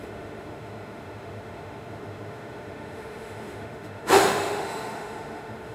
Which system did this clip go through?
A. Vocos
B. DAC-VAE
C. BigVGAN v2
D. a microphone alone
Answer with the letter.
B